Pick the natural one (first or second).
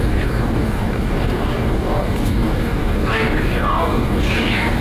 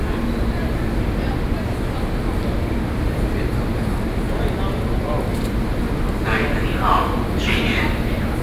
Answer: second